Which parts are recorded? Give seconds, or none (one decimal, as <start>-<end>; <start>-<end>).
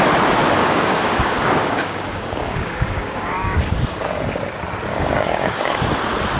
0.0-0.6; 4.4-4.9; 5.8-6.4